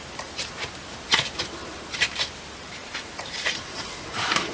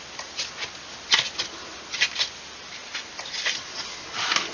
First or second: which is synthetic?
first